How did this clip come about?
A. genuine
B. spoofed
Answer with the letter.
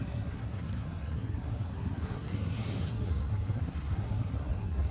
B